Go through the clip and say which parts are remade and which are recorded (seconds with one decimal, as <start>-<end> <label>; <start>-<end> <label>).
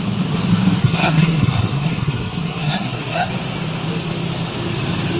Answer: 0.0-0.8 recorded; 0.8-3.3 remade; 3.3-5.2 recorded